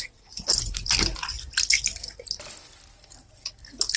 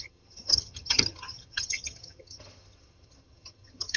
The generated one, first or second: second